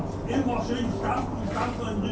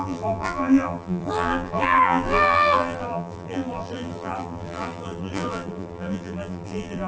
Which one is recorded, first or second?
first